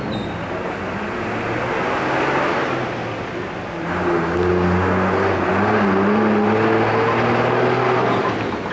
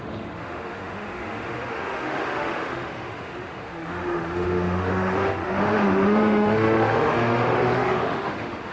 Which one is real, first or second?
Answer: first